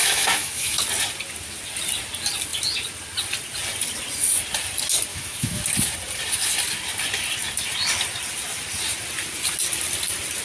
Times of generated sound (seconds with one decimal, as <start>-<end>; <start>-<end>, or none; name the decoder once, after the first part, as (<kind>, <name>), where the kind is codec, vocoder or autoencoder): 0.0-0.8 (autoencoder, DAC-VAE); 5.1-5.6